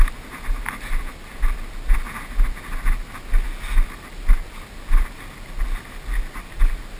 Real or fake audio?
real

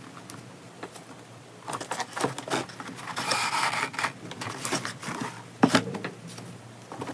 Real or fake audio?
real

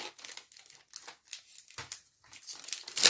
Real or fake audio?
real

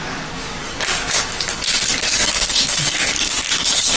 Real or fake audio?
fake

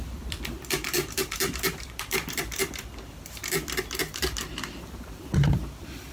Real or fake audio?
fake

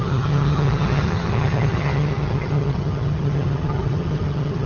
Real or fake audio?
fake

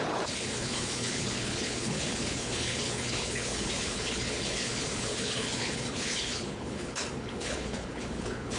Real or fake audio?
fake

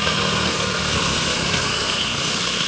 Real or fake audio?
fake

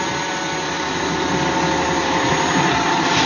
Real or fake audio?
real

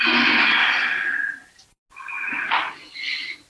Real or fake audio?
real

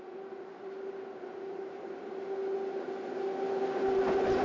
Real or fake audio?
real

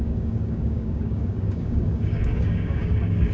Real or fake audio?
fake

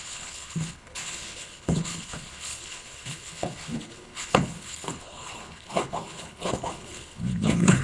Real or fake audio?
fake